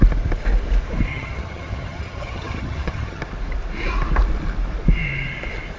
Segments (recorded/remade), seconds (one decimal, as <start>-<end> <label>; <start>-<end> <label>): 0.0-1.1 recorded; 1.1-3.2 remade; 3.2-5.8 recorded

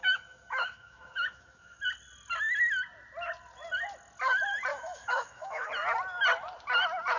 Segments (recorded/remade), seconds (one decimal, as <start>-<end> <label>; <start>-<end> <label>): 0.0-1.8 remade; 1.8-4.7 recorded; 4.7-5.7 remade; 5.7-7.2 recorded

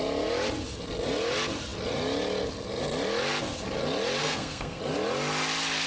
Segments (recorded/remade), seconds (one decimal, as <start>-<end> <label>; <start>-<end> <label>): 0.0-4.2 recorded; 4.2-4.8 remade; 4.8-5.9 recorded